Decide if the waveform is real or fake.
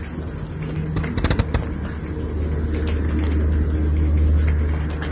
real